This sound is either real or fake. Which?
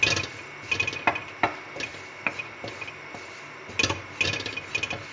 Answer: real